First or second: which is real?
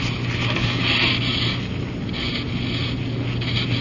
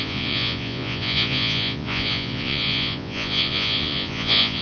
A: first